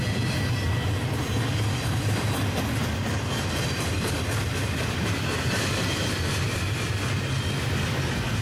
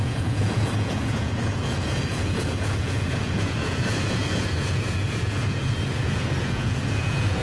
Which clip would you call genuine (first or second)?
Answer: first